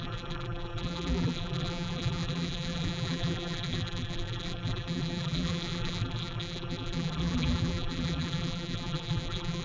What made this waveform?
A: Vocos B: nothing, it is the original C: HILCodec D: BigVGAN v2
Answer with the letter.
D